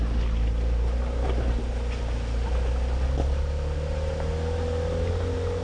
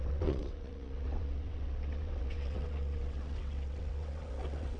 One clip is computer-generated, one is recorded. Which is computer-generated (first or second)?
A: second